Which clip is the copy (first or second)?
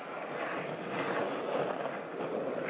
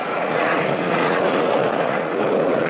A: second